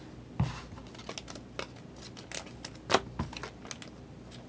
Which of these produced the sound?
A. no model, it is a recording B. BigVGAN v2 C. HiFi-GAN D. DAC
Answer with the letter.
A